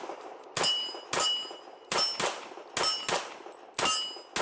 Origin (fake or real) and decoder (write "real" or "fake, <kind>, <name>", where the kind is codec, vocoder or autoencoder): real